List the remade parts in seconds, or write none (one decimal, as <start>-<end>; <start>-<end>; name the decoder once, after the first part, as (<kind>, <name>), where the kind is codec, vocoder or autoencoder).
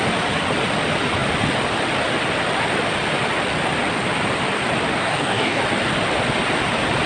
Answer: 4.9-5.6 (codec, DAC)